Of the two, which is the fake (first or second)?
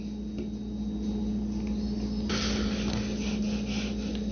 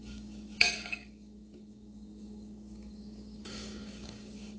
second